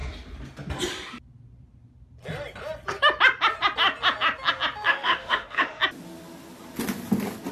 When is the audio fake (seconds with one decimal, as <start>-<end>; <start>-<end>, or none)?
4.9-5.8